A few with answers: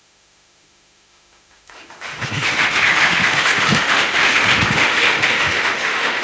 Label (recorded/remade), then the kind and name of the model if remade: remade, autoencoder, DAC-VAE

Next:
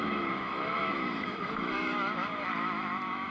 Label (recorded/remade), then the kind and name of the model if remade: remade, autoencoder, DAC-VAE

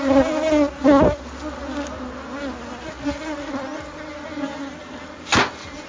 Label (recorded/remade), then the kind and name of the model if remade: recorded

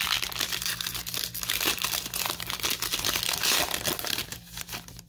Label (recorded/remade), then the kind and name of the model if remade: recorded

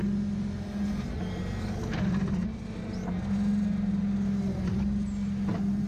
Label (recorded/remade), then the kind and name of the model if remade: recorded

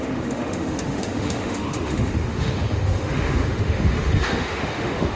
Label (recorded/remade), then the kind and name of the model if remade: remade, autoencoder, DAC-VAE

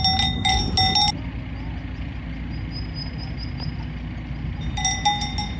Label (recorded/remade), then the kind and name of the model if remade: recorded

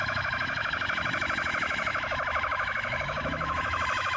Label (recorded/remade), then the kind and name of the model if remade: remade, autoencoder, DAC-VAE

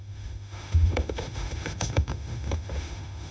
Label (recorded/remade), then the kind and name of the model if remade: remade, autoencoder, DAC-VAE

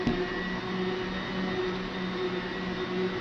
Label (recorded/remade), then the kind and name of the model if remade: recorded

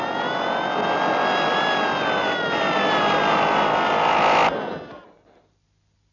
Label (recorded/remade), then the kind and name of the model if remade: recorded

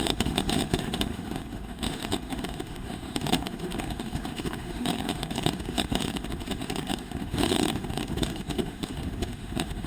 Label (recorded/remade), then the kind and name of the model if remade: remade, autoencoder, DAC-VAE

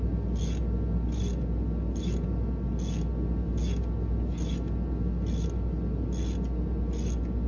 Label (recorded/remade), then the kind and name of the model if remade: recorded